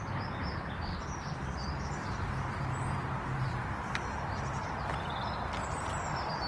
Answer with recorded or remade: recorded